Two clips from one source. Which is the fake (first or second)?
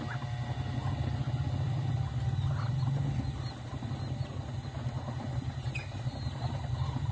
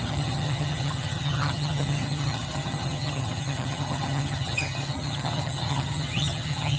second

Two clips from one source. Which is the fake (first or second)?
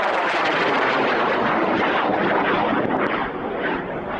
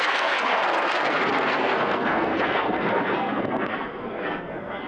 second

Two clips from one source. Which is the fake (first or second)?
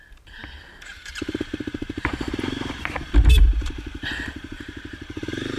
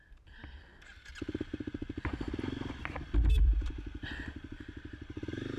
first